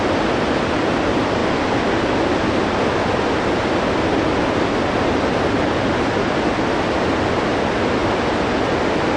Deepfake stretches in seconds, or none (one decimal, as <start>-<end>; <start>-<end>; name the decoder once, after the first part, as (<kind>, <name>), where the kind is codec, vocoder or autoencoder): none